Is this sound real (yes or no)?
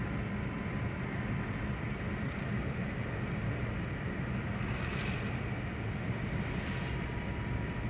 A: yes